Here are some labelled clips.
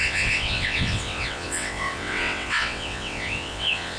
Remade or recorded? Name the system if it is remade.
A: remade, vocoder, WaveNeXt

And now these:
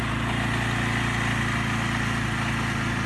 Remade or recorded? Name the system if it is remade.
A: recorded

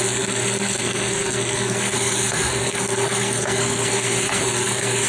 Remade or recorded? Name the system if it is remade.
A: remade, codec, SNAC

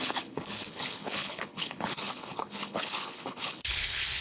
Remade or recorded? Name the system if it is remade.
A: remade, codec, HILCodec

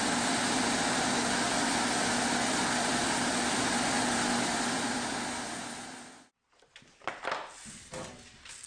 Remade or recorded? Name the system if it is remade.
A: recorded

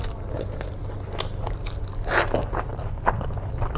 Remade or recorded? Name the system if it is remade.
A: recorded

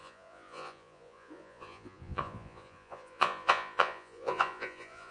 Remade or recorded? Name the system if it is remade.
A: remade, vocoder, Vocos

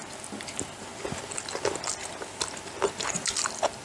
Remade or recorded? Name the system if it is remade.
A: recorded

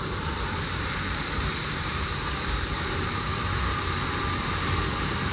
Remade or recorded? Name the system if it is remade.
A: remade, vocoder, BigVGAN v2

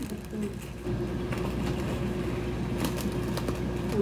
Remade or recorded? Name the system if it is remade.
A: recorded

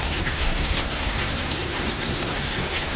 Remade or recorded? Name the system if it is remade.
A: remade, codec, SNAC